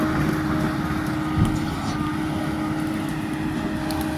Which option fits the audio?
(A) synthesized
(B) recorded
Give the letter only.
B